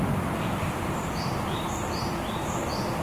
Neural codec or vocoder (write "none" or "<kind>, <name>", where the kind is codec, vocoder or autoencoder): vocoder, BigVGAN v2